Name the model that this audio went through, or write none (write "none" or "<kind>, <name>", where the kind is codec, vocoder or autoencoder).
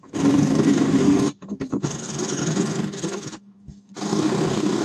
codec, DAC